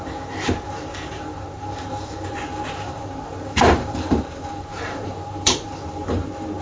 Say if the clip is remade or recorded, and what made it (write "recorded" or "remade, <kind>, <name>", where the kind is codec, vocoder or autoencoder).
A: remade, vocoder, BigVGAN v2